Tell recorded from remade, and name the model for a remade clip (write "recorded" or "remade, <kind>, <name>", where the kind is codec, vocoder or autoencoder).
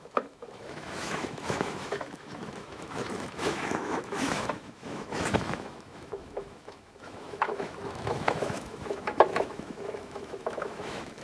remade, autoencoder, DAC-VAE